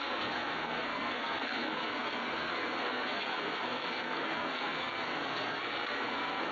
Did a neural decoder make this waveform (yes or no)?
yes